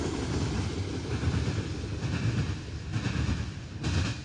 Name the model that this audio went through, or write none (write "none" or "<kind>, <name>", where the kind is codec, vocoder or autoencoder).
none